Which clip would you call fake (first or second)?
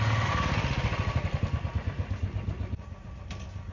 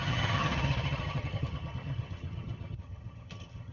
second